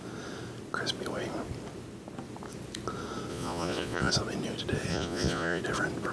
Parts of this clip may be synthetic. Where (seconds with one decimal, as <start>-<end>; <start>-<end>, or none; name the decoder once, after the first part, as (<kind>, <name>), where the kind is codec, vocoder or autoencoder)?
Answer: 3.3-4.1 (vocoder, Vocos); 4.9-5.6